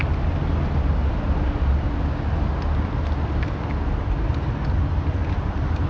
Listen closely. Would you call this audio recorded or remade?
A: recorded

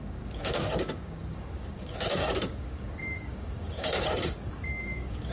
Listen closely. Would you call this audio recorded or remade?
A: remade